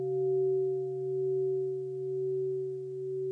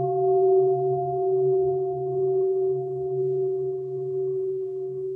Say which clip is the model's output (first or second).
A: second